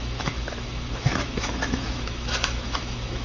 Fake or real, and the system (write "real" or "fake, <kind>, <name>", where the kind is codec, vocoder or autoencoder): fake, autoencoder, DAC-VAE